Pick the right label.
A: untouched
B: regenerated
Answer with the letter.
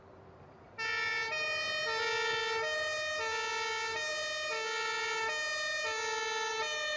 A